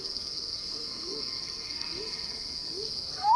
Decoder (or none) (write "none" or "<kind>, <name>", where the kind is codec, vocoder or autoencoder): codec, SNAC